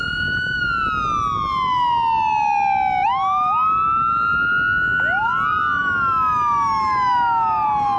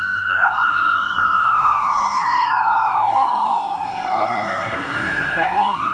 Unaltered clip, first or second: first